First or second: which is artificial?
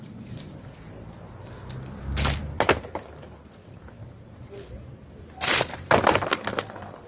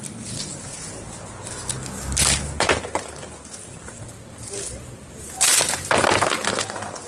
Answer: first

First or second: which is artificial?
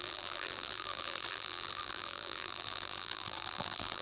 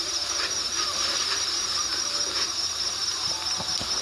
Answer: first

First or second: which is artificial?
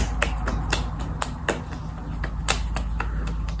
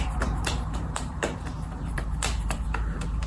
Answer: second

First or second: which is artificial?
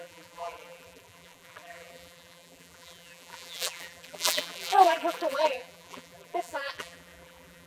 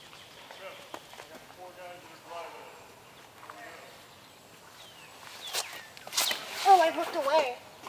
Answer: first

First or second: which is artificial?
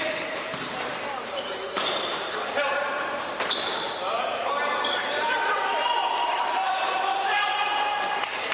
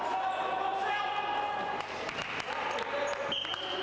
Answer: first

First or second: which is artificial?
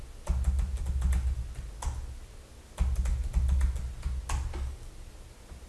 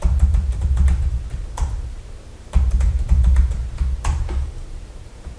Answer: second